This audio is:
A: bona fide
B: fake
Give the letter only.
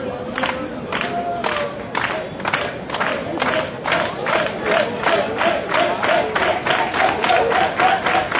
A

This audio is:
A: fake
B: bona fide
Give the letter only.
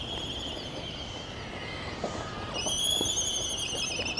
B